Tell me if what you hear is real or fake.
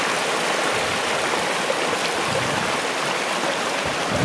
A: real